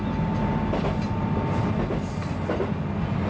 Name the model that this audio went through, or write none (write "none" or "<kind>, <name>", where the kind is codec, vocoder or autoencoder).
none